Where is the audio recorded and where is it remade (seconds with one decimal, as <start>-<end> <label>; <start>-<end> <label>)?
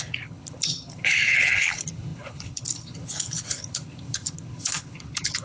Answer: 0.0-5.4 remade